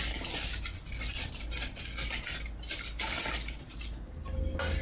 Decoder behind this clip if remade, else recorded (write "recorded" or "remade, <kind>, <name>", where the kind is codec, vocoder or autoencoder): recorded